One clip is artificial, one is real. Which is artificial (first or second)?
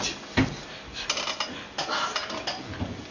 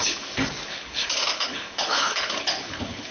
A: second